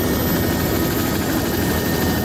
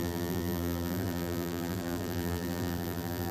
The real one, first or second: first